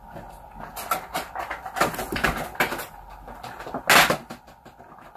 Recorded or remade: recorded